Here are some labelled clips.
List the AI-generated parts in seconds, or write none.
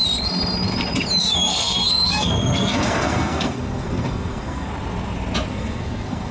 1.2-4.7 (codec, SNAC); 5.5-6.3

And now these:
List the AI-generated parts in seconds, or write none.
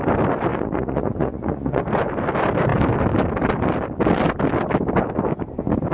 0.5-1.8 (vocoder, Vocos)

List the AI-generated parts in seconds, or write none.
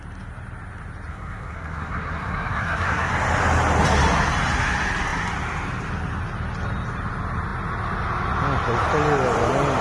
1.1-3.1 (codec, SNAC)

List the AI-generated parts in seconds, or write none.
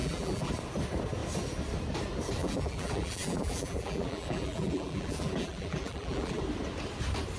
0.0-0.5 (vocoder, BigVGAN v2); 2.4-6.4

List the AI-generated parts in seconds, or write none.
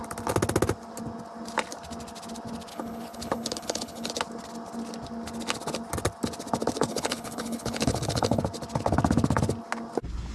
2.7-4.1 (codec, HILCodec); 6.9-8.4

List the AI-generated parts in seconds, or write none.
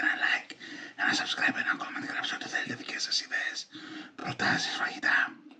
0.4-1.1 (vocoder, Vocos); 1.7-2.7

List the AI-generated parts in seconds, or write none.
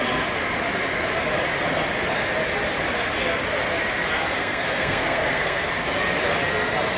4.4-5.7 (codec, SNAC)